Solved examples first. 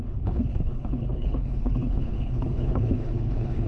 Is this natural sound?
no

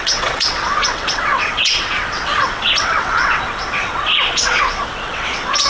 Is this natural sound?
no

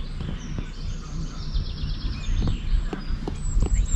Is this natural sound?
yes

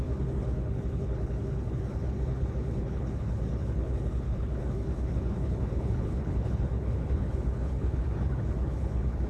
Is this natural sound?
no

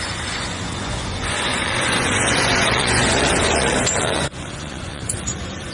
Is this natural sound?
no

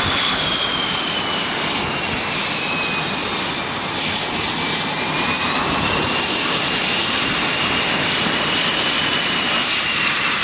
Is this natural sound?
yes